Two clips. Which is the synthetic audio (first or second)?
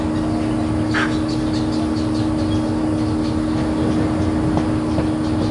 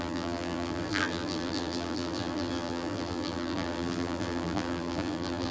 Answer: second